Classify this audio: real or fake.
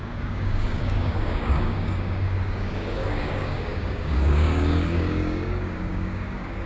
fake